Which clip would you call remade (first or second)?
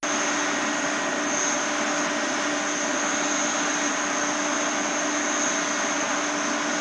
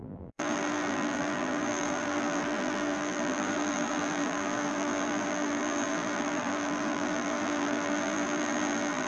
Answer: second